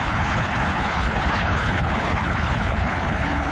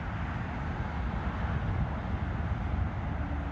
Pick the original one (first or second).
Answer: second